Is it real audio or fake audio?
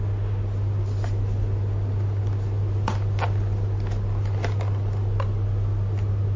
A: real